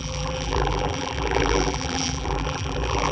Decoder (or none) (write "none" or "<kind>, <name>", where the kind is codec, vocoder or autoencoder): vocoder, BigVGAN v2